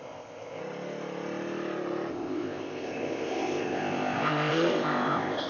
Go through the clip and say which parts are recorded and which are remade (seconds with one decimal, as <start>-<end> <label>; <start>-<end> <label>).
0.0-0.6 remade; 0.6-2.1 recorded; 2.1-5.5 remade